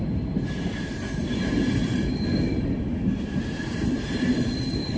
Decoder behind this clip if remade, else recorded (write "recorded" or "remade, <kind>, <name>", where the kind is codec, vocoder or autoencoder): remade, vocoder, BigVGAN v2